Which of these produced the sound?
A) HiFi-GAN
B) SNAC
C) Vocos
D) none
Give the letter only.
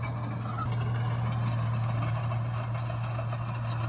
D